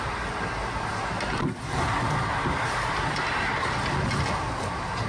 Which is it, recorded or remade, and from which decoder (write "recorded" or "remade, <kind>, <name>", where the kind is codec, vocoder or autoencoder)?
recorded